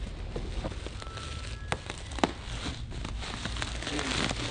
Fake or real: real